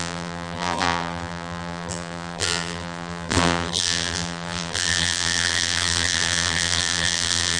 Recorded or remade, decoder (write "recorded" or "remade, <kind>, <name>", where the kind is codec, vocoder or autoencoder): remade, vocoder, BigVGAN v2